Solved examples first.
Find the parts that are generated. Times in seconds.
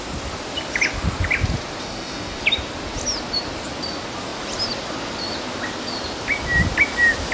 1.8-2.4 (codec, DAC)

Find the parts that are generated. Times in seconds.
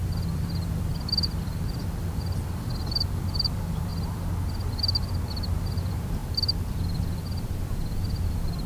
0.0-3.9 (vocoder, BigVGAN v2); 5.3-8.7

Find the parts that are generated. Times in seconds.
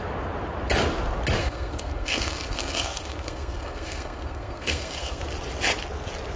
1.4-5.2 (codec, SNAC)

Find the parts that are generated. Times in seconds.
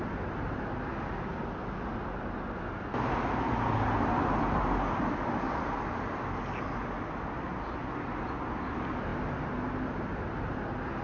none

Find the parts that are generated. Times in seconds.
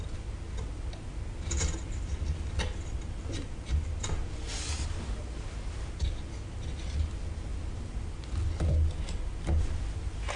none